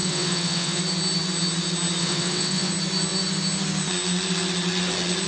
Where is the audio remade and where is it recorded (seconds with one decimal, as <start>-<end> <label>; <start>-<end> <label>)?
0.0-0.8 remade; 0.8-2.0 recorded; 2.0-2.7 remade; 2.7-5.3 recorded